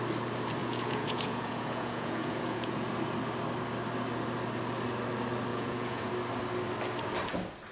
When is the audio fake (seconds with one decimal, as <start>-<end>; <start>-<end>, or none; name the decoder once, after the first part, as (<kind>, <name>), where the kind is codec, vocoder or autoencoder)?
0.6-2.9 (vocoder, Vocos); 5.5-6.1